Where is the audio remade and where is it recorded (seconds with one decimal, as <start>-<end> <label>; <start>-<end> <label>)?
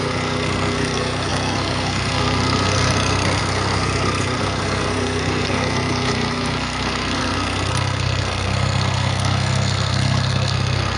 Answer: 0.0-11.0 remade